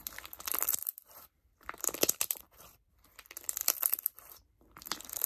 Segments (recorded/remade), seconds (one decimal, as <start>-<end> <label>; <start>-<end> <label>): 0.0-0.8 recorded; 0.8-2.9 remade; 2.9-3.6 recorded; 3.6-5.3 remade